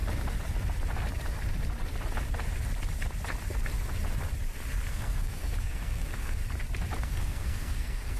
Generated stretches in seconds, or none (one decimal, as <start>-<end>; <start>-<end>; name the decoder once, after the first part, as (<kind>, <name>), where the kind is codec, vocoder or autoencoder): 4.9-6.4 (codec, SNAC); 7.0-8.2